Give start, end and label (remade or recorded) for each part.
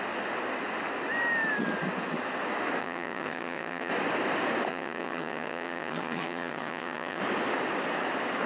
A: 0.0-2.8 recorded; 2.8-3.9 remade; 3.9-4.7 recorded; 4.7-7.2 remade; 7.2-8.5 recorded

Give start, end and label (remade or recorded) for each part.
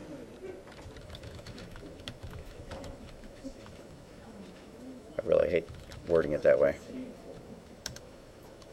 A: 0.0-1.0 recorded; 1.0-8.7 remade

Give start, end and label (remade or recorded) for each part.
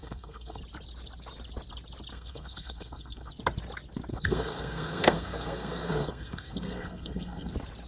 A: 0.0-0.6 remade; 0.6-2.1 recorded; 2.1-3.3 remade; 3.3-4.1 recorded; 4.1-7.5 remade; 7.5-7.9 recorded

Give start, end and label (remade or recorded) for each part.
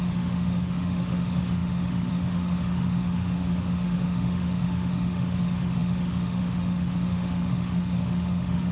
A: 0.0-8.7 remade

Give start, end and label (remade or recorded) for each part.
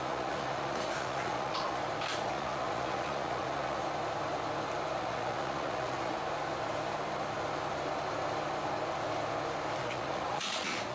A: 0.0-1.8 remade; 1.8-2.3 recorded; 2.3-3.8 remade; 3.8-5.0 recorded; 5.0-6.2 remade; 6.2-9.8 recorded; 9.8-10.9 remade